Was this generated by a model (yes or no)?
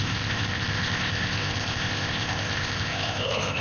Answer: yes